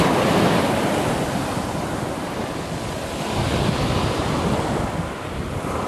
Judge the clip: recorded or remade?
recorded